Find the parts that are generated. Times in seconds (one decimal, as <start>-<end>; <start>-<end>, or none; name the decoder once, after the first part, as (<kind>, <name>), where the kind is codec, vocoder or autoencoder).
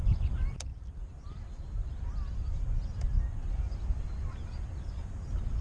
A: none